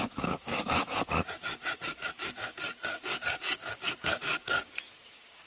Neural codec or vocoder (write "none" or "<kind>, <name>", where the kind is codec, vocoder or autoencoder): codec, DAC